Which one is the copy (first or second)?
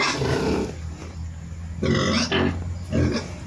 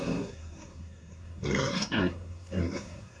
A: second